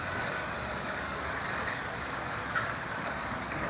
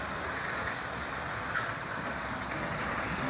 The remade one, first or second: first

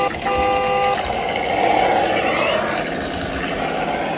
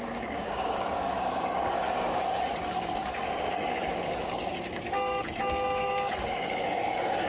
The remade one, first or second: second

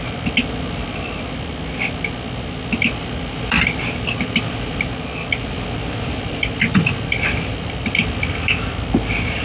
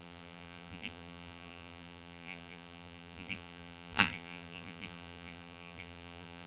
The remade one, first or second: second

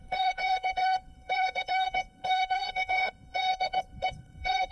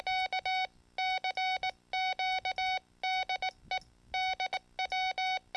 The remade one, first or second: first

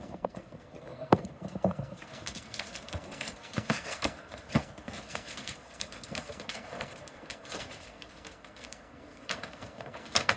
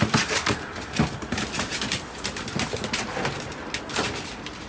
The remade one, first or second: first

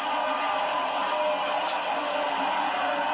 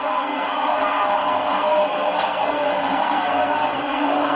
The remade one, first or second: second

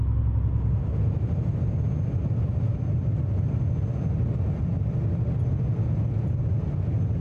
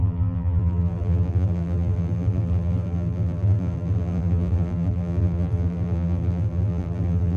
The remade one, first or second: second